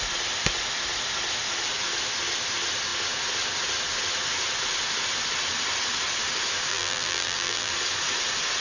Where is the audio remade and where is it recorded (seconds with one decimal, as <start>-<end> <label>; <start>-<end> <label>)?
0.0-6.7 recorded; 6.7-7.7 remade; 7.7-8.6 recorded